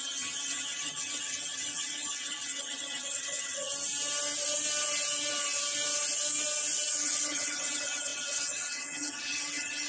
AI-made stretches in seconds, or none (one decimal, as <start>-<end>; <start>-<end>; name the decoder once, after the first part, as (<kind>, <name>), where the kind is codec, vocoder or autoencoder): 0.0-3.7 (vocoder, HiFi-GAN); 6.9-9.9